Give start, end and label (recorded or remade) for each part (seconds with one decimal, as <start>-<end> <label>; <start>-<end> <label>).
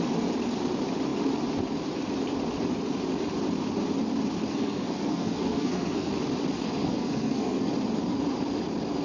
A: 0.0-4.5 recorded; 4.5-6.1 remade; 6.1-6.8 recorded; 6.8-7.7 remade; 7.7-9.0 recorded